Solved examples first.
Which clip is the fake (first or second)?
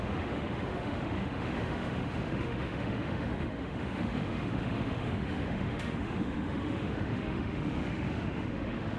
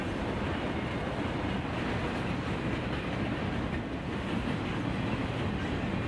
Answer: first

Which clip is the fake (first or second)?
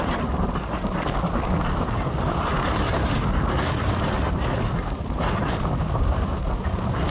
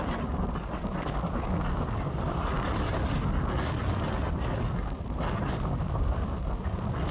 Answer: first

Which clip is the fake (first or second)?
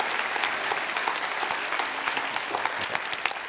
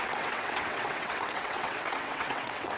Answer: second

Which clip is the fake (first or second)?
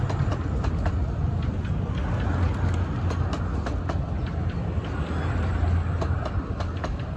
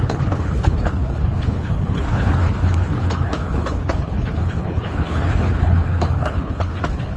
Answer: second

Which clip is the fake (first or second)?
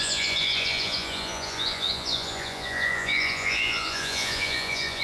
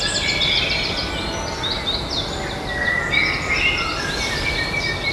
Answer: first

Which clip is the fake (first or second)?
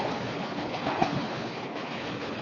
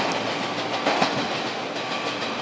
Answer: first